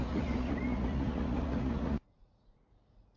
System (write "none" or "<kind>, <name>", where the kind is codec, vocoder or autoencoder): vocoder, Vocos